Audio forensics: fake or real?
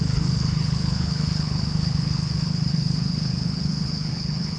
fake